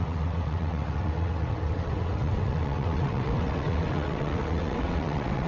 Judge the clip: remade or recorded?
remade